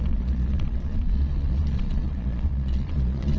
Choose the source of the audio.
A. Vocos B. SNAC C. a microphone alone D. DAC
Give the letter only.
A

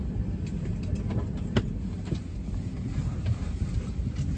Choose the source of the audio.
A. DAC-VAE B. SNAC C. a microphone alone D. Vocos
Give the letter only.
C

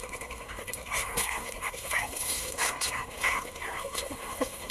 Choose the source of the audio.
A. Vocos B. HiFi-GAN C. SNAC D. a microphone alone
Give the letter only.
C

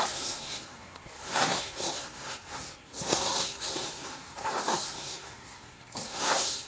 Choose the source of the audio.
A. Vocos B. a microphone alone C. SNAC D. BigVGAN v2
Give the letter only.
C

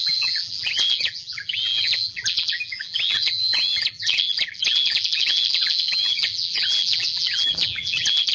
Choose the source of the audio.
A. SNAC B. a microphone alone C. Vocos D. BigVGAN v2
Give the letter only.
D